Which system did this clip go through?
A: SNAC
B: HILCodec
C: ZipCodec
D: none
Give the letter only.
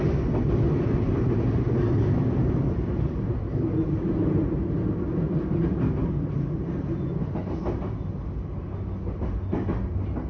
D